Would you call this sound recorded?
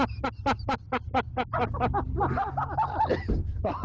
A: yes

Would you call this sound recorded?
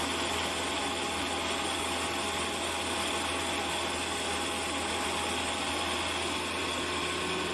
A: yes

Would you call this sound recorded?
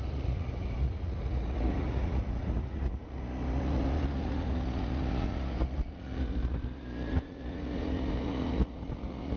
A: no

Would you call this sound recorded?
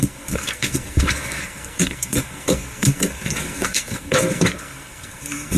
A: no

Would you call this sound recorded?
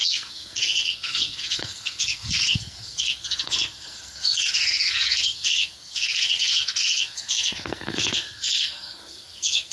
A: no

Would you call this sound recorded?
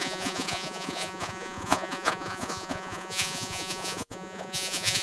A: no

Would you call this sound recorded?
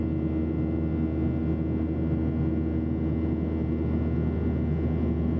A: yes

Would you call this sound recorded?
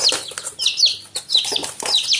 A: yes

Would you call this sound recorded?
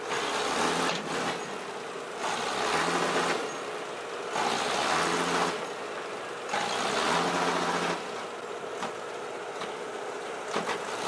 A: yes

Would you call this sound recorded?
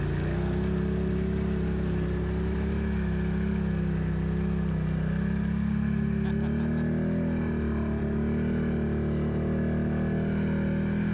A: yes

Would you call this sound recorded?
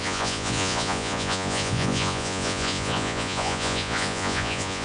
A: no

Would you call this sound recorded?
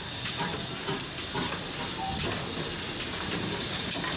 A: yes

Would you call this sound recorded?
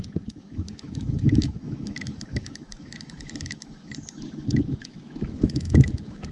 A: no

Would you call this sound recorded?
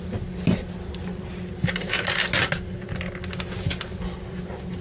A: yes